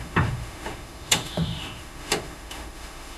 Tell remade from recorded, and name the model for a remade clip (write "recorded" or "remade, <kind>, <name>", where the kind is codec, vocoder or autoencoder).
remade, autoencoder, DAC-VAE